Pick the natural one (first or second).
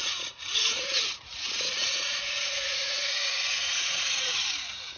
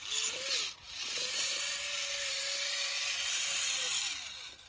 second